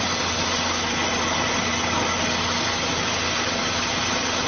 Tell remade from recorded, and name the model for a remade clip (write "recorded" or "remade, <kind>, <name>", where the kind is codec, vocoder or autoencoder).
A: recorded